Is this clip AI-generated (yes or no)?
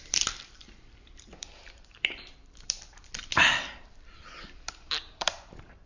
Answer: yes